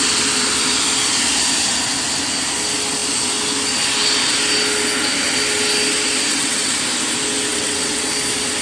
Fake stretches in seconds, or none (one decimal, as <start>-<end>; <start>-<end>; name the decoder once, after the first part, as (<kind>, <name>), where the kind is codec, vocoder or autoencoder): 6.3-6.8 (vocoder, WaveNeXt); 7.5-8.1